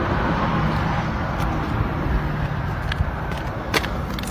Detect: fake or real real